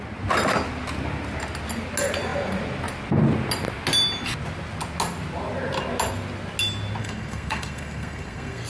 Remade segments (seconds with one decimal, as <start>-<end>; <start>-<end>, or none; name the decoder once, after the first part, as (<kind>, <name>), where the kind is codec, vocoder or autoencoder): 7.0-8.7 (codec, SNAC)